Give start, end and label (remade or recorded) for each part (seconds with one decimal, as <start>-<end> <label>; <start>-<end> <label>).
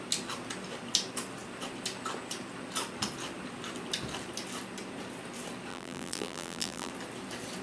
0.0-5.7 recorded; 5.7-6.9 remade; 6.9-7.6 recorded